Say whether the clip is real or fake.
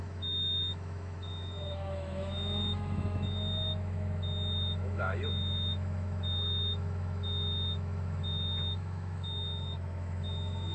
fake